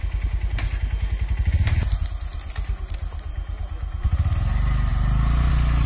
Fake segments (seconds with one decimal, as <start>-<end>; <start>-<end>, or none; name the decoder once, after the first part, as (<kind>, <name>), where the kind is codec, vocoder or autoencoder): none